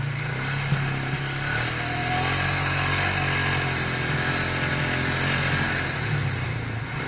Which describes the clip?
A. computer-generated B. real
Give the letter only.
B